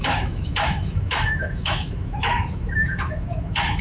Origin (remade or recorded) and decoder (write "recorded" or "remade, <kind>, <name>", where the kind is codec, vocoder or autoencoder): remade, autoencoder, DAC-VAE